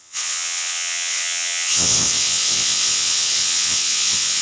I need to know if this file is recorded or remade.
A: remade